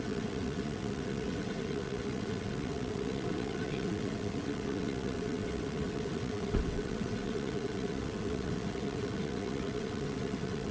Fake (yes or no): yes